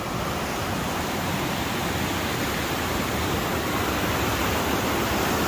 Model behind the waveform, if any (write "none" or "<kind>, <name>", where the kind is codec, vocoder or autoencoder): none